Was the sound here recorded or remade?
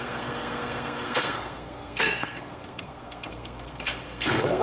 remade